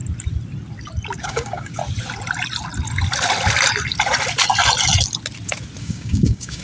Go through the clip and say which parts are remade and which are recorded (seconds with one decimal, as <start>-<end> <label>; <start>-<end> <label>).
0.0-1.2 recorded; 1.2-1.8 remade; 1.8-5.8 recorded; 5.8-6.6 remade